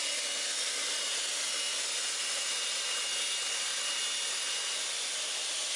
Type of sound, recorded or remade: recorded